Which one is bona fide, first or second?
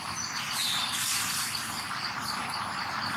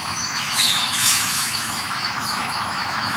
first